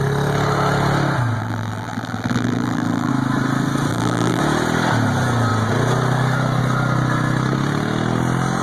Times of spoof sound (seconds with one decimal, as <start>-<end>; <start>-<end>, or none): 1.4-3.1; 3.9-4.4